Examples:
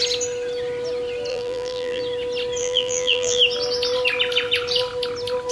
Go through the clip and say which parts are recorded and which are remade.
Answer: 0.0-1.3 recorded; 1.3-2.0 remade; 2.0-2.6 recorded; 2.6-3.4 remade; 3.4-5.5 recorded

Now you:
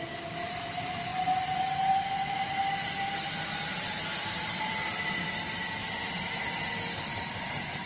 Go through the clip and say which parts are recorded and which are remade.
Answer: 0.0-1.1 remade; 1.1-1.9 recorded; 1.9-4.7 remade; 4.7-7.3 recorded; 7.3-7.9 remade